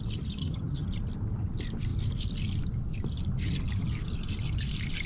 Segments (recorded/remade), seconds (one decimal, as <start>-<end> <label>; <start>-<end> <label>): 0.0-0.4 recorded; 0.4-0.9 remade; 0.9-5.1 recorded